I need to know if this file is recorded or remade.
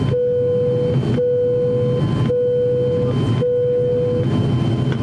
recorded